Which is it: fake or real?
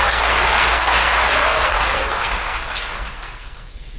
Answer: fake